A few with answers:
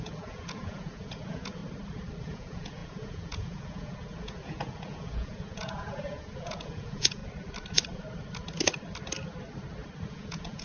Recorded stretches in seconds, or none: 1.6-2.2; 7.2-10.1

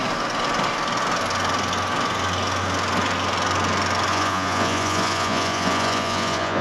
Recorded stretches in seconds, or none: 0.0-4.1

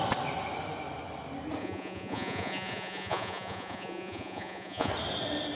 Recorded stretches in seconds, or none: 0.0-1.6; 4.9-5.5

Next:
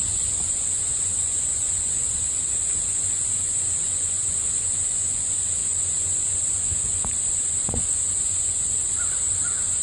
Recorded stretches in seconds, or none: none

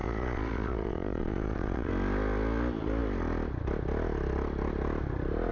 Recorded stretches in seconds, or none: 1.9-5.5